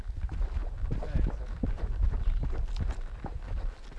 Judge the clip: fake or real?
real